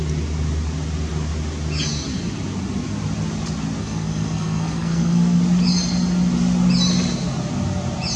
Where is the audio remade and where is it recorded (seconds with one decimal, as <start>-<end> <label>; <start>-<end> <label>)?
0.0-3.8 recorded; 3.8-5.4 remade; 5.4-8.2 recorded

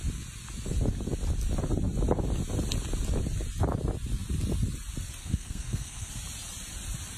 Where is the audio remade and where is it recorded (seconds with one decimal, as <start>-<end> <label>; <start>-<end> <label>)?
0.0-5.2 recorded; 5.2-6.1 remade; 6.1-7.2 recorded

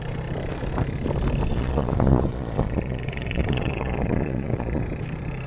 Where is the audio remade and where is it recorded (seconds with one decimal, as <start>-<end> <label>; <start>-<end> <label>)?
0.0-1.5 recorded; 1.5-4.8 remade; 4.8-5.5 recorded